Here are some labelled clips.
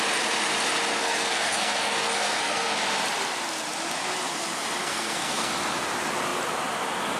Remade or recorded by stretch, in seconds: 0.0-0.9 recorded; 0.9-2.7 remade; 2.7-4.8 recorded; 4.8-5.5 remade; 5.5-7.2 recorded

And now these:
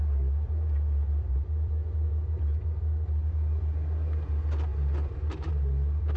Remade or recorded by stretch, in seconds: 0.0-6.2 recorded

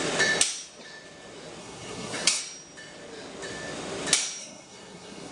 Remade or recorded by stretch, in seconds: 0.0-1.6 recorded; 1.6-2.4 remade; 2.4-4.4 recorded; 4.4-5.3 remade

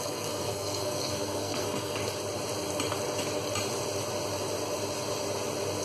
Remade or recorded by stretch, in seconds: 0.0-2.0 remade; 2.0-5.8 recorded

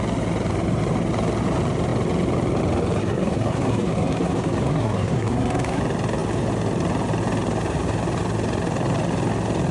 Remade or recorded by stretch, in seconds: 0.0-3.0 recorded; 3.0-5.8 remade; 5.8-9.7 recorded

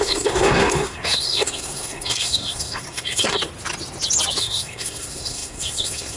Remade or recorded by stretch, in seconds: 0.0-3.4 remade; 3.4-4.4 recorded; 4.4-6.2 remade

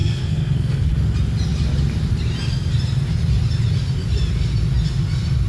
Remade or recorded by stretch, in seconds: 0.0-0.9 remade; 0.9-5.5 recorded